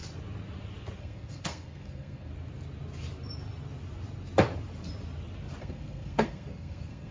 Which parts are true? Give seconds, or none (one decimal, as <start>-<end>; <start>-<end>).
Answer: 0.0-1.0; 2.3-5.6